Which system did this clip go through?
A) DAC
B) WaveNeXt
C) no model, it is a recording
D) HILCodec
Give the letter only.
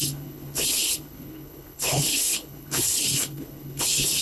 D